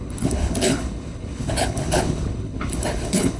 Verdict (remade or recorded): remade